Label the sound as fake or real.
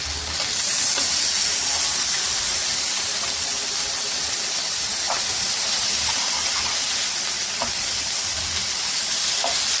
real